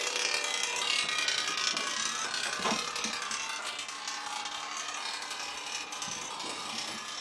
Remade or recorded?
recorded